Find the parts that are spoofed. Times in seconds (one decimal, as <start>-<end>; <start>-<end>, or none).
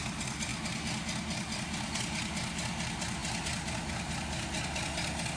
none